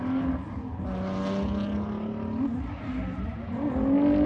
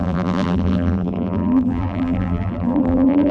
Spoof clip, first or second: second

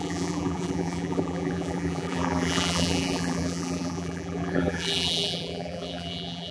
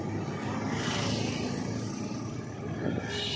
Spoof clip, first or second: first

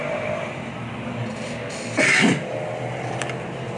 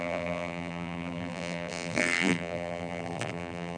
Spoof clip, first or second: second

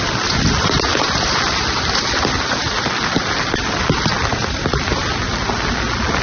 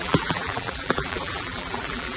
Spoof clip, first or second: second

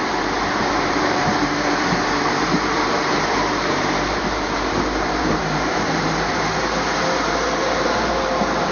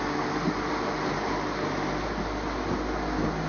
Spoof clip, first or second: first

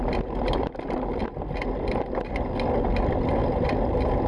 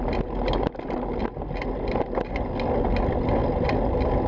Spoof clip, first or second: first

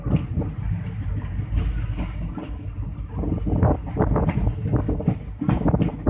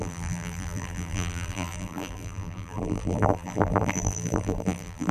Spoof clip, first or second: second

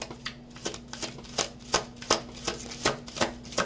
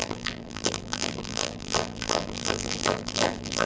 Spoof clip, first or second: second